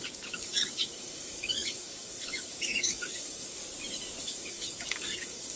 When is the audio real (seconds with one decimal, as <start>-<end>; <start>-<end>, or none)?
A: 3.6-4.2